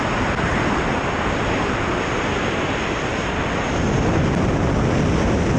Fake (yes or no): no